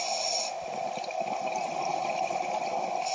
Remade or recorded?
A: recorded